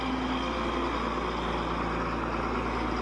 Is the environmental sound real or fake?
real